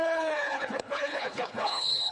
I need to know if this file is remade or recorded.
remade